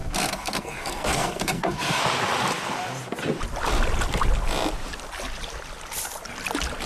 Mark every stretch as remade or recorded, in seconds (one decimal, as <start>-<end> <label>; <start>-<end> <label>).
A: 0.0-2.0 remade; 2.0-6.9 recorded